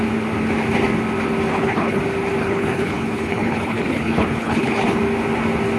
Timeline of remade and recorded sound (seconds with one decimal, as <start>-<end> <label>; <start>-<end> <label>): 0.0-1.5 recorded; 1.5-2.0 remade; 2.0-2.4 recorded; 2.4-5.0 remade; 5.0-5.8 recorded